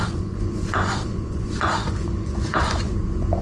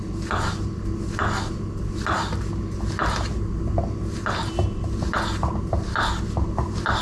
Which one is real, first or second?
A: second